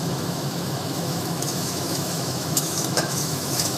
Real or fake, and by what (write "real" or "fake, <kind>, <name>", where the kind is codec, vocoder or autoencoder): fake, autoencoder, DAC-VAE